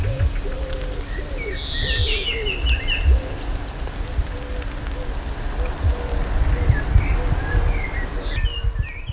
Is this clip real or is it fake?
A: real